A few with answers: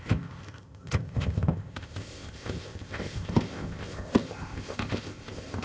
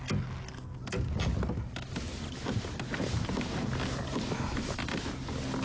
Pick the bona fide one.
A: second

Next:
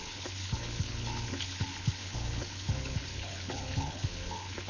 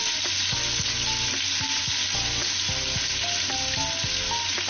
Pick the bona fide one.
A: second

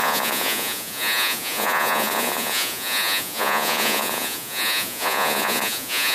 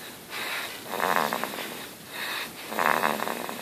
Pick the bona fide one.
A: second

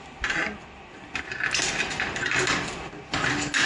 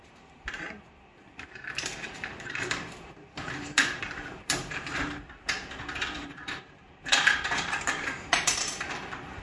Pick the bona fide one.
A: first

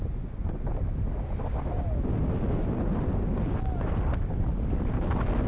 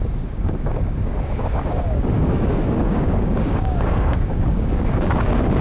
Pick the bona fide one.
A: first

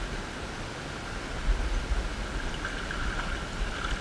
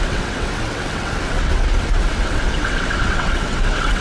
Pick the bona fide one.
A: first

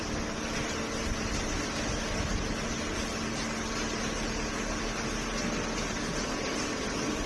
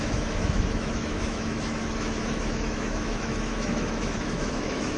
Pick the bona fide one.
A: first